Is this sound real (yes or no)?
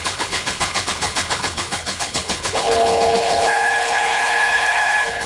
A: no